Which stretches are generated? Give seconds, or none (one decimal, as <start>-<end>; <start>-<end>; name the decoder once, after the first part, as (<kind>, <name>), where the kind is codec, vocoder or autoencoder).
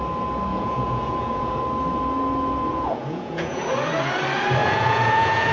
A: 0.5-1.6 (vocoder, Vocos); 2.7-3.6; 4.6-5.5